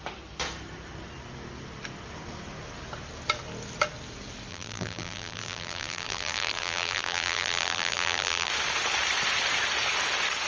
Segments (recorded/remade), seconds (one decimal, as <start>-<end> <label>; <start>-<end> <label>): 0.0-4.5 recorded; 4.5-8.5 remade; 8.5-10.5 recorded

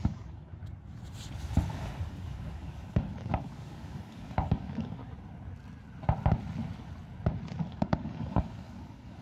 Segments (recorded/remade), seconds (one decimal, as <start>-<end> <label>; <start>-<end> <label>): 0.0-0.6 remade; 0.6-2.1 recorded; 2.1-5.0 remade; 5.0-7.7 recorded; 7.7-9.2 remade

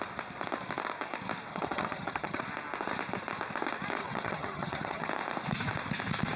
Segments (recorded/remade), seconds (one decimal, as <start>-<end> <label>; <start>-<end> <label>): 0.0-1.5 recorded; 1.5-2.4 remade; 2.4-4.0 recorded; 4.0-5.1 remade; 5.1-6.4 recorded

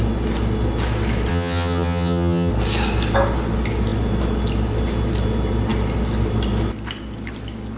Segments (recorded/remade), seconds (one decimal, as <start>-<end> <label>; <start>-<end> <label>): 0.0-1.3 recorded; 1.3-2.5 remade; 2.5-7.8 recorded

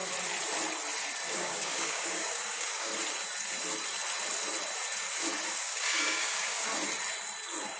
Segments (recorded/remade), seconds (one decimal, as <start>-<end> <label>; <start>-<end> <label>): 0.0-1.3 recorded; 1.3-2.9 remade; 2.9-5.5 recorded; 5.5-6.7 remade; 6.7-7.8 recorded